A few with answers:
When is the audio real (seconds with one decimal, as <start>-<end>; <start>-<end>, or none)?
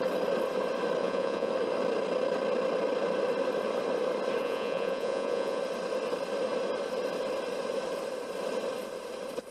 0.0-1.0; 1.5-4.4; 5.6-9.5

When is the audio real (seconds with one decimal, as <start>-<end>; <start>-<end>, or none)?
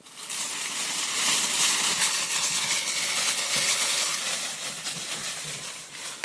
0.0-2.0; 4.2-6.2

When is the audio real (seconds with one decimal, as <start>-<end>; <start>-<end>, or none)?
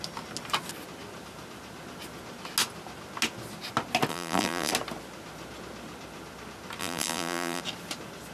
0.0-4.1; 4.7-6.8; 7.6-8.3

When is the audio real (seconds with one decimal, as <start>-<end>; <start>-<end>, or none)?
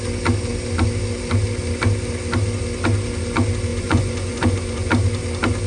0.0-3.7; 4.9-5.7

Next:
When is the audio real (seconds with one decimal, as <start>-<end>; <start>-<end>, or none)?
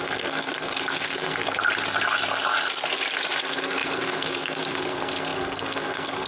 1.6-3.4